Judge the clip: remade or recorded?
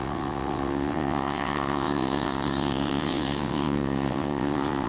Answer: remade